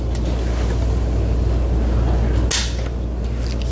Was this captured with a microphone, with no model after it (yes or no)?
yes